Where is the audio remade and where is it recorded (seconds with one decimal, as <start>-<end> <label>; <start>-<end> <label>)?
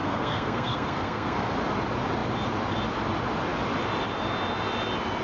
0.0-1.5 remade; 1.5-5.2 recorded